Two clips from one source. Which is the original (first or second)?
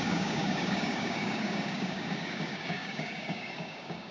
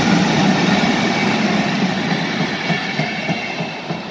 second